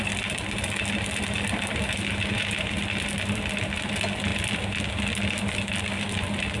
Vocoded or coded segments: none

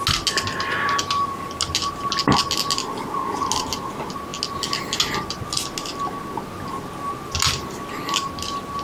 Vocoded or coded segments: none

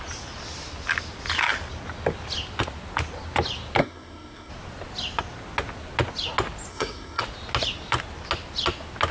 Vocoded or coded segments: 3.8-4.5 (codec, SNAC); 6.7-7.2

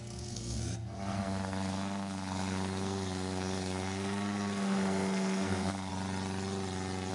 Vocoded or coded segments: 0.0-5.9 (codec, SNAC)

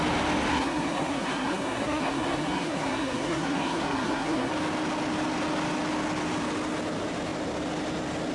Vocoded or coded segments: 0.5-4.5 (codec, SNAC)

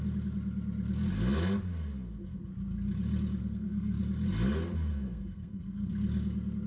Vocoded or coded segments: 3.4-4.0 (codec, SNAC); 4.9-5.9